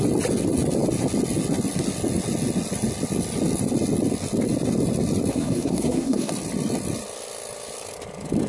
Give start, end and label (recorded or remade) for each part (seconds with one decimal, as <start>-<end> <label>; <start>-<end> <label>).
0.0-5.3 recorded; 5.3-6.3 remade; 6.3-8.5 recorded